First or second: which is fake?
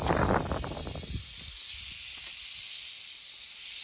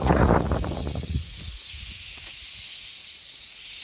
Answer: second